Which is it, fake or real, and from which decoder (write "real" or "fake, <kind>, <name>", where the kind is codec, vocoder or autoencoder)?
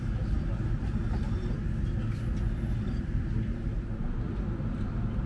real